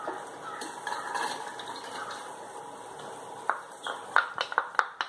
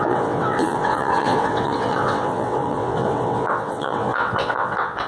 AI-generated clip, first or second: second